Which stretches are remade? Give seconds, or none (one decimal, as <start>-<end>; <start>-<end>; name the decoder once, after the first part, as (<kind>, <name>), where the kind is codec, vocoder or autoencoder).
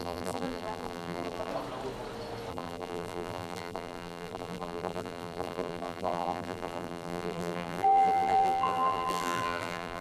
0.0-1.5 (vocoder, BigVGAN v2); 2.5-10.0